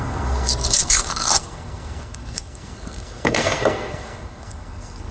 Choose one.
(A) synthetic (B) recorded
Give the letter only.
A